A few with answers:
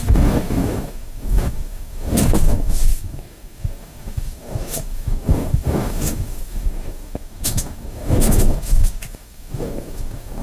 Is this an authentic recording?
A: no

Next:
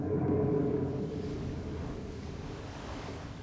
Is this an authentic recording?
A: no